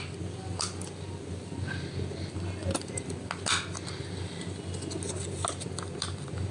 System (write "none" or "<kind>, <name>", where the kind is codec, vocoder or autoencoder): none